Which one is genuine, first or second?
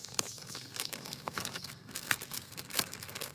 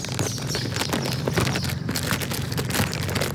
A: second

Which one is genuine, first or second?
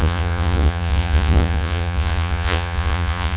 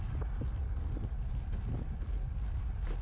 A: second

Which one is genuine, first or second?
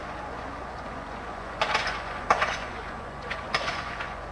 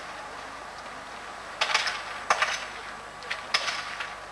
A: second